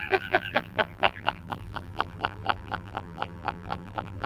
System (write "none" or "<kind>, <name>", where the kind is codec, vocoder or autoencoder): vocoder, BigVGAN v2